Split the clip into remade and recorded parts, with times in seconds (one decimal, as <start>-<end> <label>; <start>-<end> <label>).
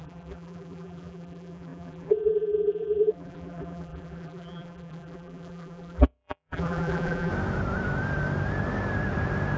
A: 0.0-7.3 remade; 7.3-9.6 recorded